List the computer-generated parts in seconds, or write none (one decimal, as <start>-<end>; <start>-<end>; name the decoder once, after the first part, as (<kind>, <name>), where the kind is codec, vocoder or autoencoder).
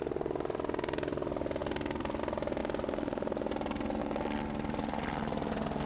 none